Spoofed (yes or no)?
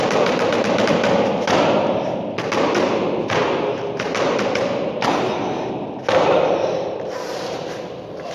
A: no